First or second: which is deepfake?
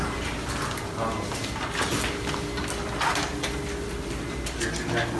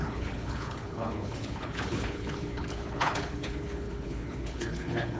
second